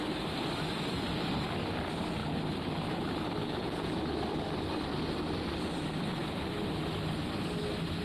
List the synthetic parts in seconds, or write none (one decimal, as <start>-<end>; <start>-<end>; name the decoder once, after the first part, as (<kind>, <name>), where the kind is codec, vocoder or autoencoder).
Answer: 3.4-4.0 (vocoder, Vocos)